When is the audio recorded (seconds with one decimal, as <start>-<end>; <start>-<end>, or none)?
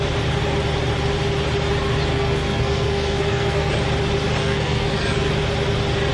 0.0-2.1; 3.7-4.4; 5.3-6.1